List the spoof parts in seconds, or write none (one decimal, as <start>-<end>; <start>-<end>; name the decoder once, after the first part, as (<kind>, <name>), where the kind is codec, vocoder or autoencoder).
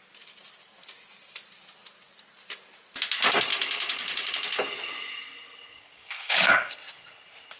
3.5-4.3 (codec, DAC); 5.7-6.7